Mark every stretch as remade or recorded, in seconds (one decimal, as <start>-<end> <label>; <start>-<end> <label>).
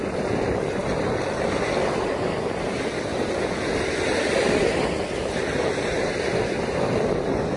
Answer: 0.0-7.6 recorded